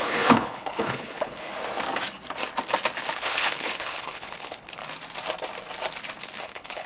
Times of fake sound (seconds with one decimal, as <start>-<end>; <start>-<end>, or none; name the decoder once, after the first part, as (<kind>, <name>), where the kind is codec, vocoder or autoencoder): 0.0-1.5 (codec, HILCodec); 3.1-4.8; 6.4-6.9